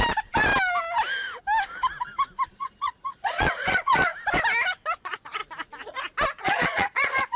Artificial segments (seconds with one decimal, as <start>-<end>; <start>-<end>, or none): 2.5-4.1; 5.0-5.4; 6.4-7.4